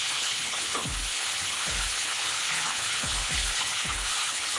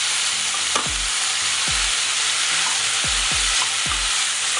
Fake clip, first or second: first